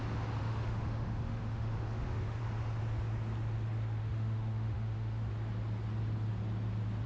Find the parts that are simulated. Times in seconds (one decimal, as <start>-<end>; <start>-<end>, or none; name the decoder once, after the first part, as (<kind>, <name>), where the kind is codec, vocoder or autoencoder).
0.4-2.4 (autoencoder, DAC-VAE); 4.0-5.2